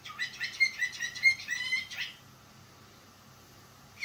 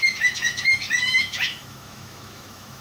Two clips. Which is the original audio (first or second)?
first